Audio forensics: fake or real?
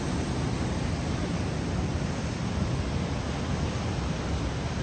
real